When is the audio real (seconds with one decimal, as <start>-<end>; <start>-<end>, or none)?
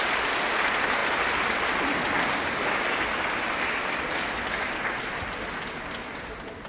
0.0-6.7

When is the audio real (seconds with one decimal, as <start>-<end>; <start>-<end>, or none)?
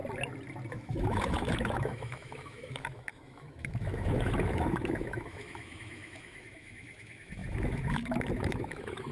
0.0-0.7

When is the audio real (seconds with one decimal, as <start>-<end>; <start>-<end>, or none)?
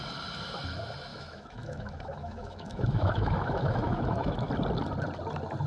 0.0-1.1; 4.5-5.7